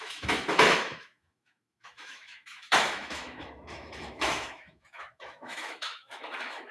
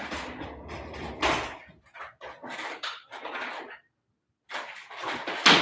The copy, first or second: first